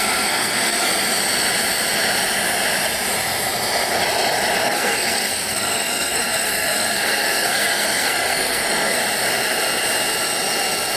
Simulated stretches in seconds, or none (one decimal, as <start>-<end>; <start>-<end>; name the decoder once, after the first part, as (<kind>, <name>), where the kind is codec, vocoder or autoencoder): 0.0-0.9 (codec, SNAC); 4.6-9.0

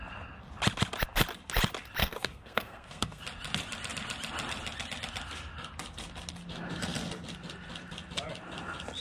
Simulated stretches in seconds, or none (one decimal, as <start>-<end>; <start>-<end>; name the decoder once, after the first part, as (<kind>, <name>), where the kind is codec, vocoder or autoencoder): 2.0-3.2 (codec, SNAC)

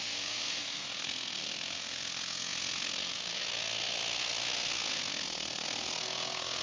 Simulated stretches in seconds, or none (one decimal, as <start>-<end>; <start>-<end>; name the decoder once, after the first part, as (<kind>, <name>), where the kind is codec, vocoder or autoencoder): 0.0-6.6 (codec, SNAC)

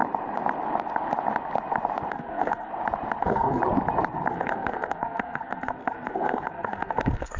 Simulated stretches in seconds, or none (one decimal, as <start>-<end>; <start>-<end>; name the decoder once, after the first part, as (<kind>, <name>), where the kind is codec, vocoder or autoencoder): 2.1-2.7 (codec, SNAC); 3.2-3.6; 4.3-7.4

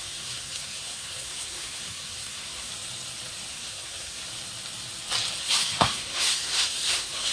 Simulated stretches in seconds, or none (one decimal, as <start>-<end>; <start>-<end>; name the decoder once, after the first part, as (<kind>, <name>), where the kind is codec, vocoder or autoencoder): 0.0-2.7 (codec, SNAC); 3.5-4.2; 5.4-7.3

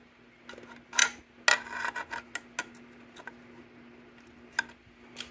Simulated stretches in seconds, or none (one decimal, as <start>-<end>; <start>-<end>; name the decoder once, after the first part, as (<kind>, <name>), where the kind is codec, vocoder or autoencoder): none